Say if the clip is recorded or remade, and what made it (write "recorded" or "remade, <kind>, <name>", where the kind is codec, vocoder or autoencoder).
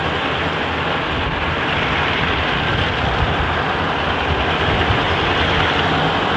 remade, vocoder, BigVGAN v2